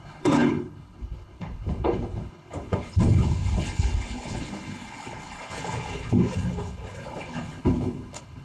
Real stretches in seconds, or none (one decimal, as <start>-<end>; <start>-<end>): none